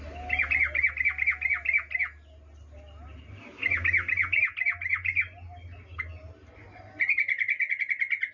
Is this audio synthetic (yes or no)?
no